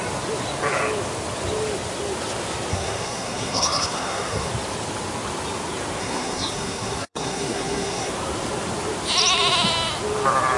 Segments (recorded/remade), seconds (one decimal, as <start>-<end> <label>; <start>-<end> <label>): 0.0-2.7 recorded; 2.7-4.5 remade; 4.5-6.0 recorded; 6.0-8.1 remade; 8.1-10.6 recorded